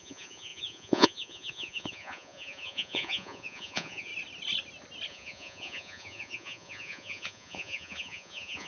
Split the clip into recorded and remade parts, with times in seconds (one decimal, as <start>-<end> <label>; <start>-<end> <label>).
0.0-4.1 remade; 4.1-5.1 recorded; 5.1-8.7 remade